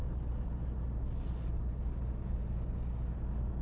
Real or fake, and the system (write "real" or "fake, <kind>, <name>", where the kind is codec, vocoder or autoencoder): real